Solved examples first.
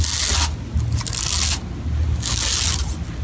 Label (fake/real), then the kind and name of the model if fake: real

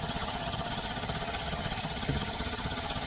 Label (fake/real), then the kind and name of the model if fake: fake, vocoder, HiFi-GAN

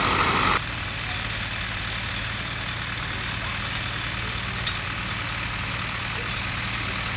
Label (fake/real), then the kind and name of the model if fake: real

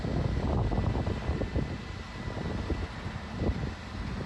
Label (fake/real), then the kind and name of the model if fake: real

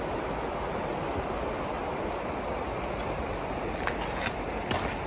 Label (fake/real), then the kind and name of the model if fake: real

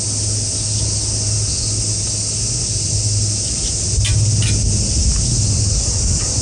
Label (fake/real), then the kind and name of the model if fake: real